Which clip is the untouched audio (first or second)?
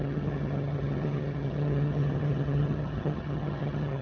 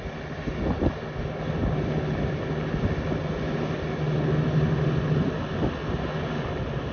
second